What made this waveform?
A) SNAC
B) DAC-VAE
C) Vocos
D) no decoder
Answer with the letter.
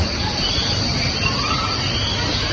D